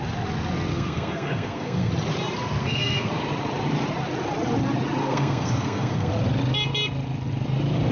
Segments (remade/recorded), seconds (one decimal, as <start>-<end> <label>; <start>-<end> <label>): 0.0-0.7 recorded; 0.7-1.9 remade; 1.9-2.6 recorded; 2.6-3.1 remade; 3.1-5.0 recorded; 5.0-6.1 remade; 6.1-7.9 recorded